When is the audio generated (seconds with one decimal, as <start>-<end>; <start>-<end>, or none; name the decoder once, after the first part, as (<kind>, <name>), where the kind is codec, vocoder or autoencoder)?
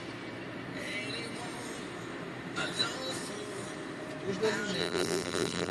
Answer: 4.8-5.7 (vocoder, BigVGAN v2)